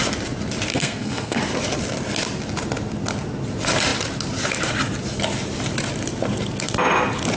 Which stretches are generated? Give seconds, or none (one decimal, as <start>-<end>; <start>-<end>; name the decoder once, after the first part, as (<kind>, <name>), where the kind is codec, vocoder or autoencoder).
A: 0.7-1.4 (codec, SNAC)